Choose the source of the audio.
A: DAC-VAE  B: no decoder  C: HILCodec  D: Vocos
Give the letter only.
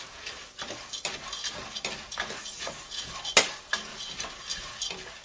B